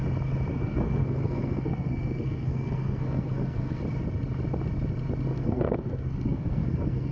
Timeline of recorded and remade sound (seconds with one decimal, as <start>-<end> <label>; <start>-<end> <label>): 0.0-0.5 recorded; 0.5-3.8 remade; 3.8-5.3 recorded; 5.3-7.1 remade